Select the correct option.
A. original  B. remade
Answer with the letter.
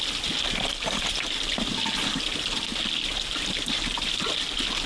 A